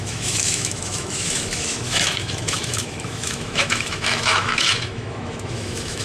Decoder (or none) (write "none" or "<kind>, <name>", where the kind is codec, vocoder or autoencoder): autoencoder, DAC-VAE